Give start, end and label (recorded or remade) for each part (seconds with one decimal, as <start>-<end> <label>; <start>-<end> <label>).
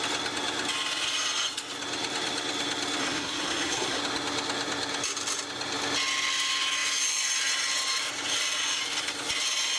0.0-3.0 recorded; 3.0-4.0 remade; 4.0-9.8 recorded